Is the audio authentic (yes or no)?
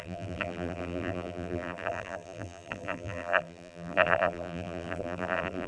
no